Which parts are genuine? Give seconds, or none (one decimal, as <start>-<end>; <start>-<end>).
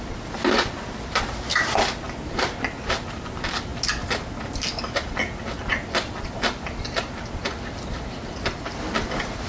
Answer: 0.0-9.5